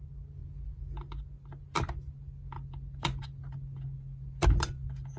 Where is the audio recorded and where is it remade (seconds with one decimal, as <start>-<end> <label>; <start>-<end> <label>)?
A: 0.0-0.4 recorded; 0.4-0.9 remade; 0.9-5.2 recorded